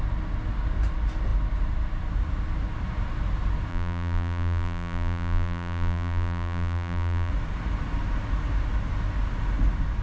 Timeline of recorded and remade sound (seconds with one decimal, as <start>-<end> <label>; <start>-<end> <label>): 0.0-3.7 recorded; 3.7-7.3 remade; 7.3-10.0 recorded